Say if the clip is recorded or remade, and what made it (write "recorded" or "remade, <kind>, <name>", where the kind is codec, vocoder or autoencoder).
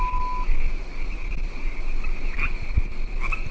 recorded